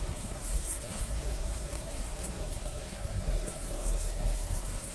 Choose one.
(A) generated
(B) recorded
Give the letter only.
A